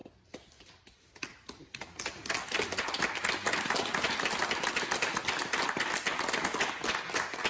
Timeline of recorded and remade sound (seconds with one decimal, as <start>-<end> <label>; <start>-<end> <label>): 0.0-7.5 recorded